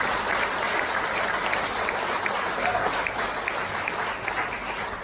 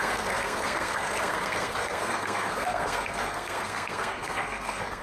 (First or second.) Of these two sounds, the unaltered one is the first